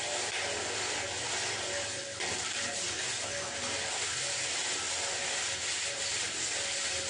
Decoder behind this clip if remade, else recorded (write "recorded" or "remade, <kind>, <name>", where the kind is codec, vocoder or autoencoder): recorded